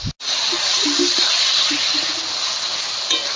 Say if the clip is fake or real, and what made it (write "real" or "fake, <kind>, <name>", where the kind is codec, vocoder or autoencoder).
real